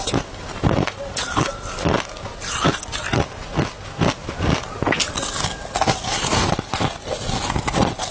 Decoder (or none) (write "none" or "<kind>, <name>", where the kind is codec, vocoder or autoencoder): none